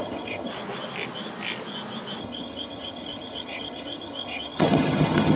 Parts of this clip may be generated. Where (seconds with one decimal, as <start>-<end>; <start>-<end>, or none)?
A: 0.0-0.5; 2.2-5.4